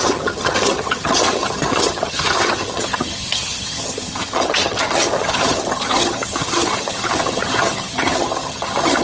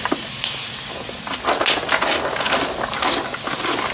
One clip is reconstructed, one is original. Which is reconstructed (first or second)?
first